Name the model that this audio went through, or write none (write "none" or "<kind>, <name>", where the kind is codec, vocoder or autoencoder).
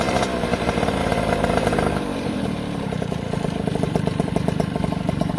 vocoder, BigVGAN v2